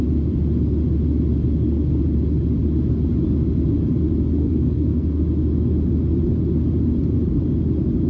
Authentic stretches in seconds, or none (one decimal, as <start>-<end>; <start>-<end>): 0.0-4.4; 5.2-8.1